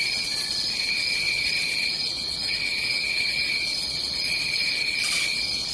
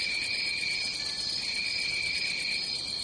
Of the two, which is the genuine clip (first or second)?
second